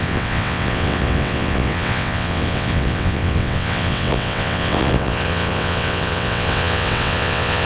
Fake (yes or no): yes